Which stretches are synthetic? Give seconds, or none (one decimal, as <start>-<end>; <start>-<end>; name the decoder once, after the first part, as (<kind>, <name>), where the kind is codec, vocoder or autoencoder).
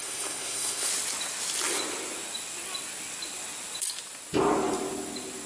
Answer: 0.0-0.9 (codec, SNAC)